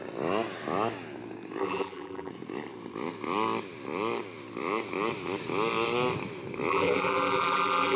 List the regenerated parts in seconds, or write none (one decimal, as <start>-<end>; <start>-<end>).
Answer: 1.6-2.3; 6.7-8.0